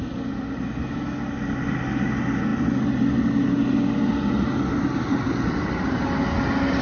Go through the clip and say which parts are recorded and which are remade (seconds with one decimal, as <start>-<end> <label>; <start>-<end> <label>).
0.0-6.8 recorded